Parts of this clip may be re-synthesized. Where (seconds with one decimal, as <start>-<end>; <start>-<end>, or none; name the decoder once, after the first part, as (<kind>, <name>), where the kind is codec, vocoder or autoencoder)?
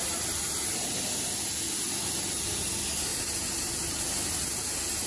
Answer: none